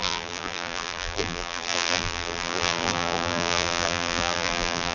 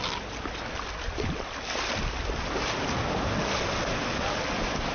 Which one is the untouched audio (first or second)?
second